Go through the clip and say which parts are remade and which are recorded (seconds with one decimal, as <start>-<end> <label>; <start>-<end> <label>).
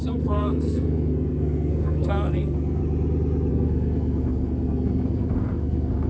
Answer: 0.0-2.8 remade; 2.8-3.5 recorded; 3.5-6.1 remade